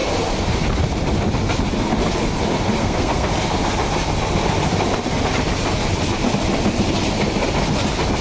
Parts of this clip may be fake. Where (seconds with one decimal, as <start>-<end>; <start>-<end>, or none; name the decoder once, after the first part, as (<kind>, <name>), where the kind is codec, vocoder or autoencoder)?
2.8-3.3 (codec, SNAC)